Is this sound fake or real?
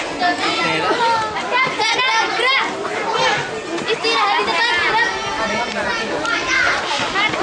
real